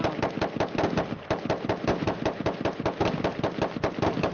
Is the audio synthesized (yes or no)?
no